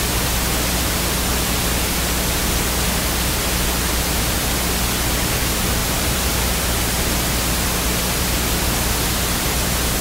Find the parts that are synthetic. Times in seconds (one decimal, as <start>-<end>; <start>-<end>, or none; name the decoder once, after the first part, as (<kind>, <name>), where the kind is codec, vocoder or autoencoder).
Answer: 5.8-6.6 (vocoder, BigVGAN v2)